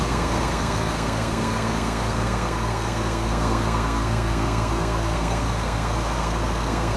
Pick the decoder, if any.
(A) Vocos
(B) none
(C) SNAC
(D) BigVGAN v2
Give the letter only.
C